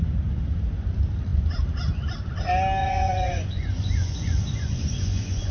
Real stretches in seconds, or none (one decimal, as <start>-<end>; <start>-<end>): 0.0-2.8